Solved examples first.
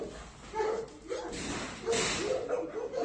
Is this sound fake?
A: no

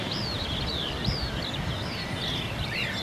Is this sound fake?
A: no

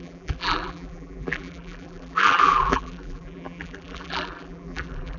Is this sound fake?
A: yes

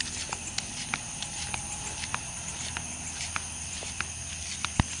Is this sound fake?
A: no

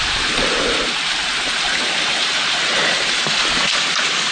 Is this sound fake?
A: yes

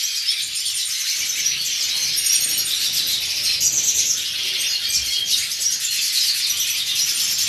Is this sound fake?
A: no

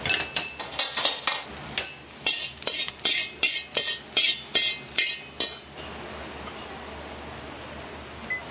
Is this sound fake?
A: no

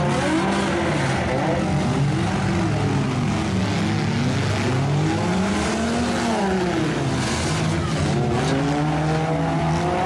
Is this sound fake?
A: no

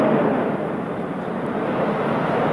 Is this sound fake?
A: yes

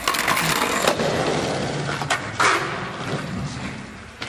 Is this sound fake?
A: no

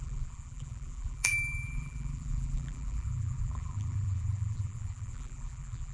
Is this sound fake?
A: yes